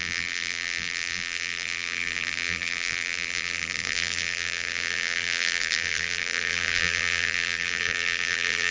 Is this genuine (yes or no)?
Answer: no